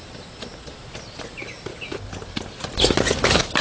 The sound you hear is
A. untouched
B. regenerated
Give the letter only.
A